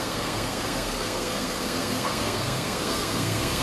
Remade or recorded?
remade